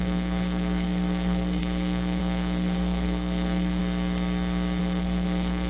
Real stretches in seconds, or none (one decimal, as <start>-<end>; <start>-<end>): 3.8-4.8